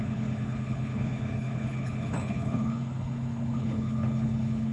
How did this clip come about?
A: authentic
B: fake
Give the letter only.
B